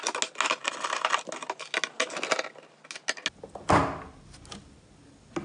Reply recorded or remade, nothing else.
recorded